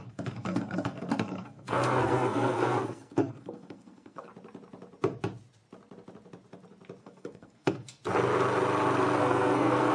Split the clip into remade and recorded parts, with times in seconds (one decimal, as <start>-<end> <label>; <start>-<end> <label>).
0.0-4.3 remade; 4.3-7.0 recorded; 7.0-8.0 remade; 8.0-9.2 recorded; 9.2-9.9 remade